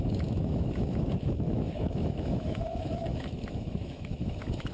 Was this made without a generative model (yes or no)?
no